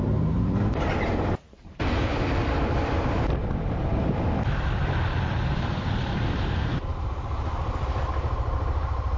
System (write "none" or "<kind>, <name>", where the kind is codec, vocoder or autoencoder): vocoder, BigVGAN v2